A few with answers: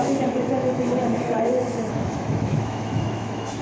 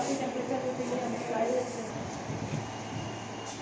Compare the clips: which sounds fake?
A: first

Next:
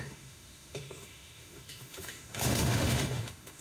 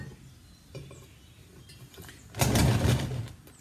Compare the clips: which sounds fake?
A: first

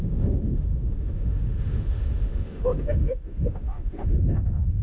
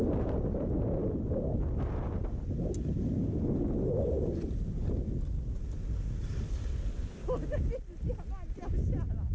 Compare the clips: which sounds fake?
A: first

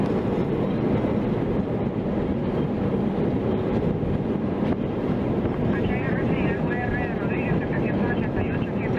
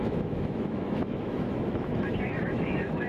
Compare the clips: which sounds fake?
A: second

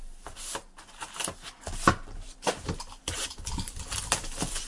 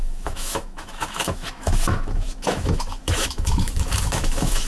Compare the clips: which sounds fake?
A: second